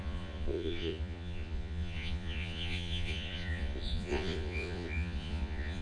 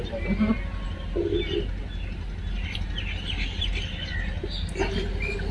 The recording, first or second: second